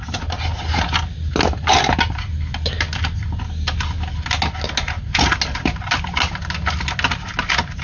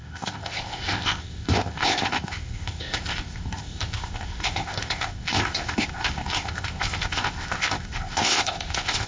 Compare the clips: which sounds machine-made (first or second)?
second